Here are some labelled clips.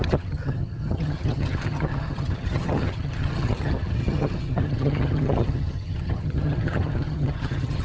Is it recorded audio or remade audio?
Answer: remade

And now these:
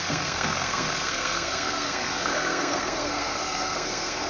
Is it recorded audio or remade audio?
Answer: remade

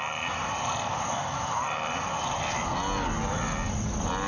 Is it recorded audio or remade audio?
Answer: recorded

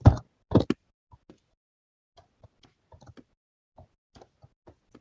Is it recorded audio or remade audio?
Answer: recorded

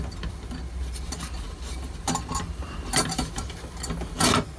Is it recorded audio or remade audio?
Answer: recorded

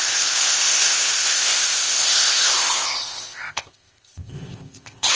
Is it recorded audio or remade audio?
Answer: remade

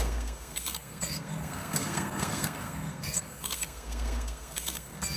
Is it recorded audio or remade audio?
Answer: remade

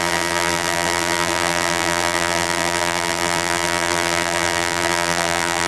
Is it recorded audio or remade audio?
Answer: remade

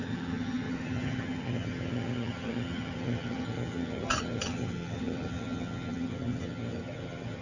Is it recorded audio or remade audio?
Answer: remade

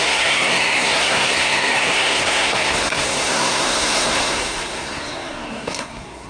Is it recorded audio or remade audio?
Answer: remade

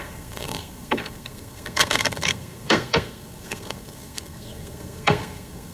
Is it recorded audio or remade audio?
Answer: remade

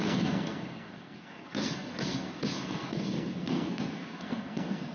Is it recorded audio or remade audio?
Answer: remade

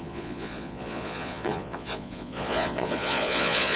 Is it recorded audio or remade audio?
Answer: remade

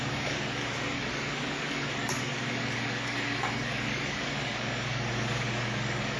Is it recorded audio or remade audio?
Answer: remade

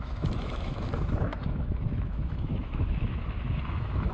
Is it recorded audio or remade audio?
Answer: remade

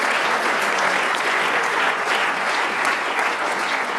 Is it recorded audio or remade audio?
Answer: remade